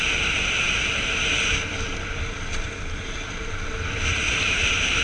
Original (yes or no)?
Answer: yes